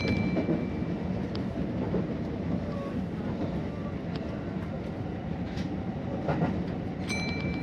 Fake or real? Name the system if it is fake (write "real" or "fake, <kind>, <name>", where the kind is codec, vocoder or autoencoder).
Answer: real